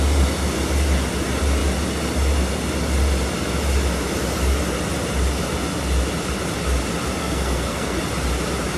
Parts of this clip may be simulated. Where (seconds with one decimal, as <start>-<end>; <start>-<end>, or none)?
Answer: 7.2-8.0